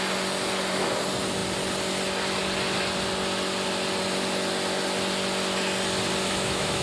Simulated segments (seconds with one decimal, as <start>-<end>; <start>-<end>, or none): 6.2-6.8